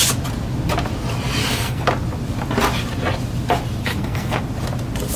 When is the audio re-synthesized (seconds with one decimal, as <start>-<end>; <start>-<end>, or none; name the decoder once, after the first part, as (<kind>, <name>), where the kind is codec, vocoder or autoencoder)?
1.4-1.9 (codec, SNAC); 3.8-4.4